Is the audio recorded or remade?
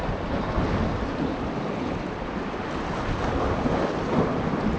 recorded